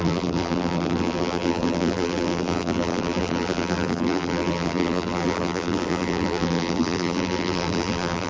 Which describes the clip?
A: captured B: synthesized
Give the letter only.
B